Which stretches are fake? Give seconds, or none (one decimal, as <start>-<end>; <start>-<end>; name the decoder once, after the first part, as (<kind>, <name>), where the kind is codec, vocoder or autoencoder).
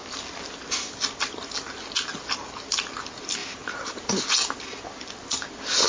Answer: 3.4-4.2 (vocoder, BigVGAN v2)